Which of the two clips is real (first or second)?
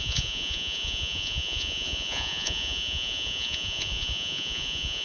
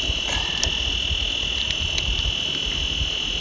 second